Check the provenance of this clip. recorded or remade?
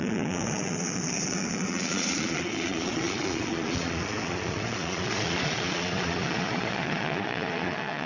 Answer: remade